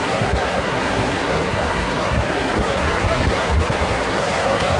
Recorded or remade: remade